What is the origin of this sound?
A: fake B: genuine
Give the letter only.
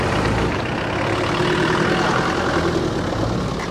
B